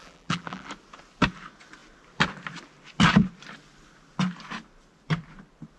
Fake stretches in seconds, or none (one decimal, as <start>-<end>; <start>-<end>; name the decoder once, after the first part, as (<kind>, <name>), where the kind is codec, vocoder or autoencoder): 0.0-0.7 (vocoder, BigVGAN v2)